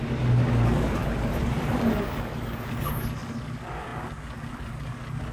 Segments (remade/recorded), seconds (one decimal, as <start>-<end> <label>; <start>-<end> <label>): 0.0-5.3 remade